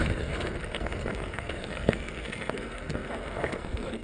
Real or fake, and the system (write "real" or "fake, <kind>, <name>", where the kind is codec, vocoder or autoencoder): fake, codec, SNAC